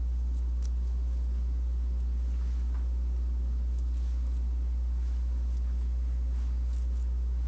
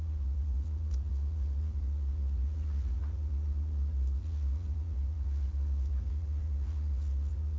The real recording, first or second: first